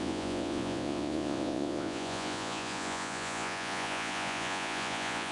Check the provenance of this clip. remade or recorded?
remade